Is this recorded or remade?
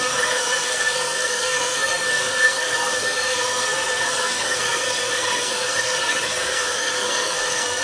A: remade